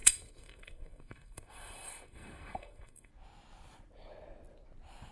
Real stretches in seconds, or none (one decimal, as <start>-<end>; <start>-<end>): 3.1-5.1